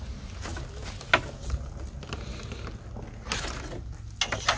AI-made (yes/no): no